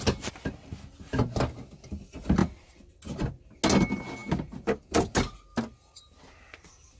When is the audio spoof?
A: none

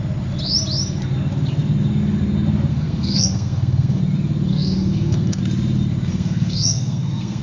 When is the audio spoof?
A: 2.7-4.0 (codec, SNAC); 4.5-5.4; 6.1-7.4

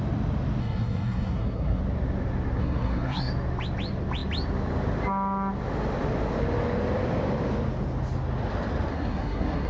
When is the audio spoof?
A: 0.6-1.8 (codec, SNAC); 2.6-3.3; 8.9-9.7

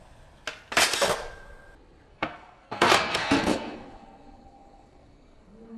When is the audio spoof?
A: 2.1-5.8 (codec, SNAC)

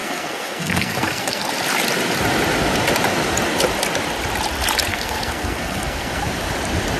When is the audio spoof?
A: 0.0-1.5 (codec, SNAC); 4.9-6.2

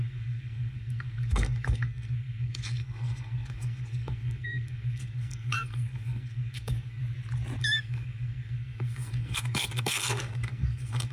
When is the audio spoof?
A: 0.0-7.0 (codec, SNAC); 7.6-11.1

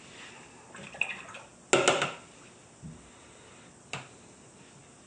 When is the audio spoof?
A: none